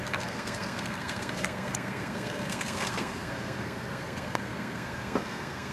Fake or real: fake